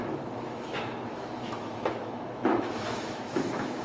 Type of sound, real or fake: fake